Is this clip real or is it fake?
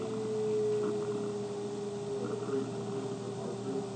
real